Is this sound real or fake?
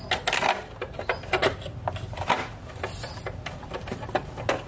real